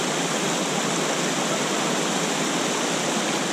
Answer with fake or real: real